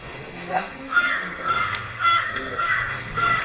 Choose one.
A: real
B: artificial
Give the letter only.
B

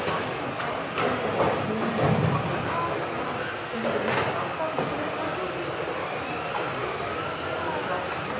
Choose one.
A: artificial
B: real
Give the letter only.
B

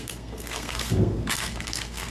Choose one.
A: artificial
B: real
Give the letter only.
A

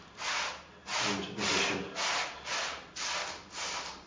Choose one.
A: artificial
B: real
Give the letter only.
B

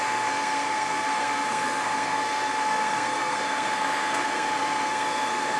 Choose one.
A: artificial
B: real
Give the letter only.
A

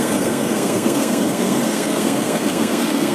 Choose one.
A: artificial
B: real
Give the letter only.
A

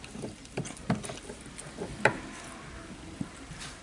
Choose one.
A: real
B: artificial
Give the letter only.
A